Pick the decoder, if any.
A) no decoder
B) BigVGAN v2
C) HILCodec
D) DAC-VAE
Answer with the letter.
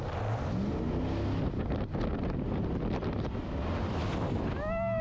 A